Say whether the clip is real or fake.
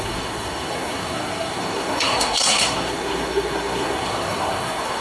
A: fake